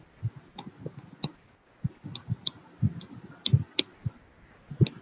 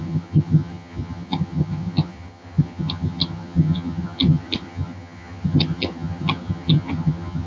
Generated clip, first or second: second